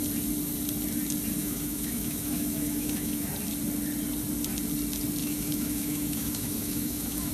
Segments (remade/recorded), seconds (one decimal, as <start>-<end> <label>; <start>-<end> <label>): 0.0-1.4 recorded; 1.4-3.3 remade; 3.3-5.2 recorded; 5.2-7.3 remade